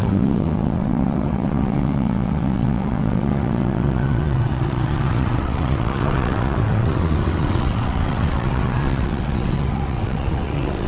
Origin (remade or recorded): remade